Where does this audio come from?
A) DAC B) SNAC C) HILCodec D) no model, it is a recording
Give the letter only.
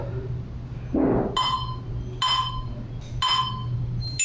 D